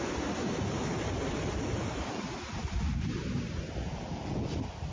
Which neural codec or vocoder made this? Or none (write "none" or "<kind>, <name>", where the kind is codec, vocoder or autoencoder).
none